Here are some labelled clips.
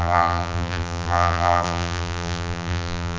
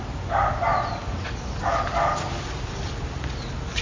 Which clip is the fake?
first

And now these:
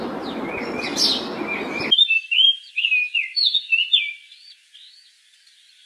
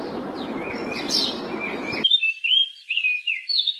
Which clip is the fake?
second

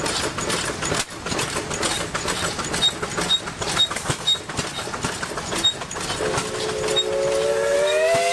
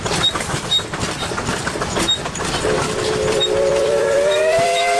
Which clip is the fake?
second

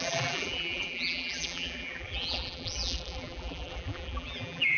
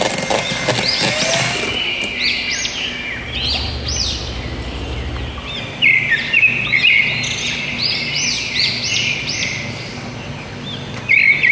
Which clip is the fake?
first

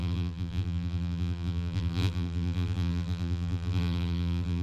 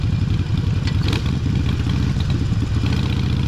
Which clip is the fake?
first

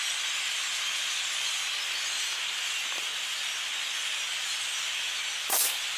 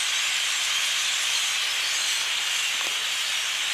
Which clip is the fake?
second